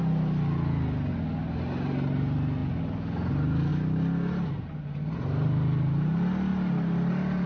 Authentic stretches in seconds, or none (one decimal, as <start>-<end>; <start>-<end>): 0.0-6.5; 7.1-7.5